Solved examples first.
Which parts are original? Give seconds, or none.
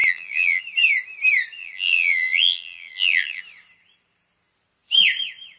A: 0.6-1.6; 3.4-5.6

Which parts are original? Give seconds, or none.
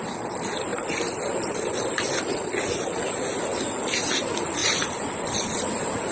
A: 0.0-0.7; 1.7-4.6; 5.2-6.1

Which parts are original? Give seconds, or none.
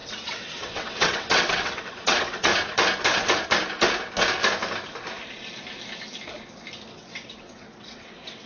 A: 2.5-6.9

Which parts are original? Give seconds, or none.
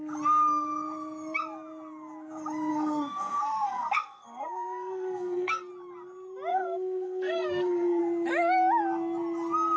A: 0.0-2.7; 5.7-6.5; 8.0-9.8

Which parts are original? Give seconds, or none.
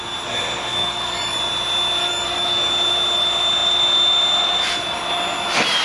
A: 0.0-0.7; 1.4-2.0; 2.7-5.8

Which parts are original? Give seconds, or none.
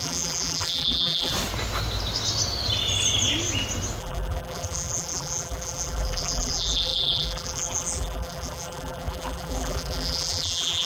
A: 1.3-4.0